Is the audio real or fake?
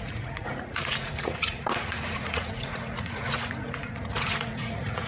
fake